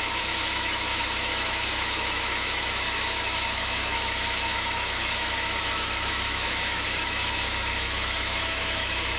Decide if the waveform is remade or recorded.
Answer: remade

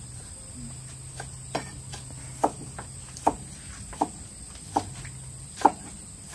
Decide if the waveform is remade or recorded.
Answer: recorded